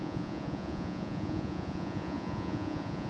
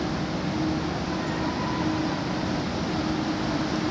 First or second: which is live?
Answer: second